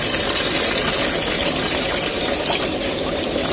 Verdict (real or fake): real